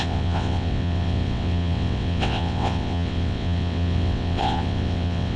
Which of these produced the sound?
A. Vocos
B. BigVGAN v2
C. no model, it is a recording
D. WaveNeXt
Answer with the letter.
D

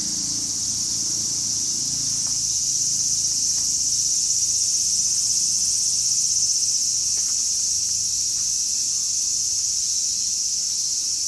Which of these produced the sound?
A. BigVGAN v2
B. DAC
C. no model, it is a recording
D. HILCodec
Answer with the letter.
C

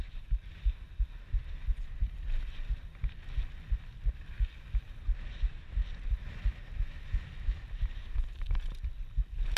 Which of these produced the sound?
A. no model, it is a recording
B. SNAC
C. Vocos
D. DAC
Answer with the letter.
A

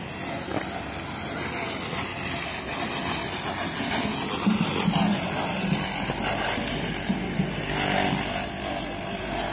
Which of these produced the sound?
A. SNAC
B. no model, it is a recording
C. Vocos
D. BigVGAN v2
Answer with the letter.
B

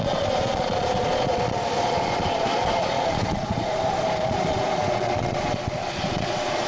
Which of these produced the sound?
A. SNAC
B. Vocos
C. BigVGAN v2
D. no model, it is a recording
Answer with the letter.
B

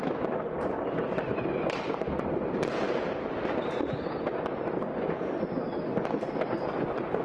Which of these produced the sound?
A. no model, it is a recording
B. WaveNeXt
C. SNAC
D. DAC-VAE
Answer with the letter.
A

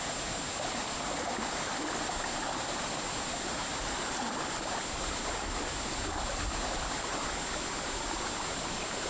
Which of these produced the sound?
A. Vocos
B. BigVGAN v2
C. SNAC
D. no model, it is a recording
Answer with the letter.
D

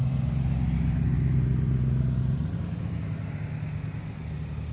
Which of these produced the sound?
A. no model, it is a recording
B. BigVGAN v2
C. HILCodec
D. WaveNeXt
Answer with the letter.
A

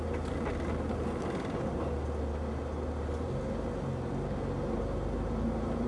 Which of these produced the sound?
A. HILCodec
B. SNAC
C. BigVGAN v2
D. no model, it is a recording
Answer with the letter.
D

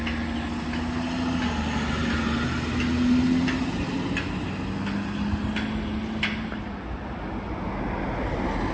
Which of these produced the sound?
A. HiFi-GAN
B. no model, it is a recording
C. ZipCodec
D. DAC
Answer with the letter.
B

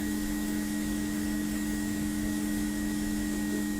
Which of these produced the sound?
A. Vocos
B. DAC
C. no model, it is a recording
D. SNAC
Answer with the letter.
B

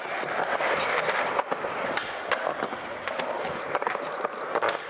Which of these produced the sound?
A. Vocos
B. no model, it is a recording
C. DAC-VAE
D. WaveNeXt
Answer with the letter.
B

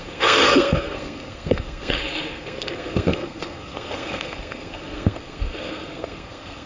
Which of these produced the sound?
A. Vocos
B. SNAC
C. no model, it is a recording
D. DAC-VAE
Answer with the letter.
B